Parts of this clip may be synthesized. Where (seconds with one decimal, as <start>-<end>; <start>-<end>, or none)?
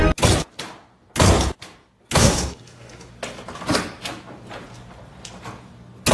2.2-3.1